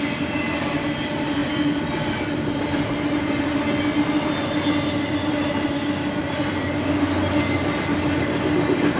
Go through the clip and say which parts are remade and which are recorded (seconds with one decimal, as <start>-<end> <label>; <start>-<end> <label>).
0.0-9.0 recorded